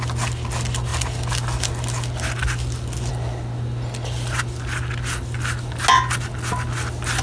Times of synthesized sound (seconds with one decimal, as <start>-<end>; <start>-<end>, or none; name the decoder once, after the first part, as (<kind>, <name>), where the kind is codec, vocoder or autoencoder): none